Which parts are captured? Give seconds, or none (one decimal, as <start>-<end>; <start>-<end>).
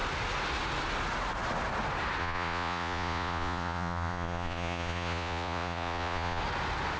0.0-2.2; 6.4-7.0